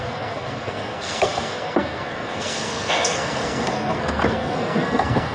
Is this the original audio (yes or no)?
no